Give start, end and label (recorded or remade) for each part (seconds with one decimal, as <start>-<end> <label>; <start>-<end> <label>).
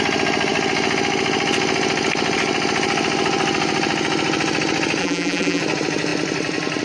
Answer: 0.0-5.0 recorded; 5.0-5.6 remade; 5.6-6.8 recorded